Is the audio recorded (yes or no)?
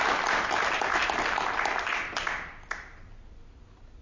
yes